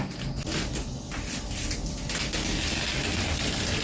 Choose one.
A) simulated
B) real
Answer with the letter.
B